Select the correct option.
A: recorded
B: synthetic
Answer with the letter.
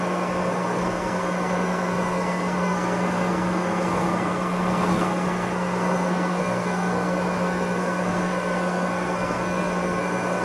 B